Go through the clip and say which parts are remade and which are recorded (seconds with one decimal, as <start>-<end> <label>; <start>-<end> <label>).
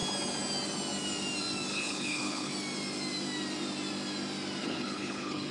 0.0-1.7 recorded; 1.7-2.5 remade; 2.5-4.6 recorded; 4.6-5.5 remade